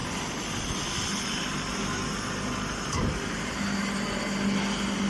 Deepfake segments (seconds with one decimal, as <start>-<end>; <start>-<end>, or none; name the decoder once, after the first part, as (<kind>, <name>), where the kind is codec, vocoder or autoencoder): none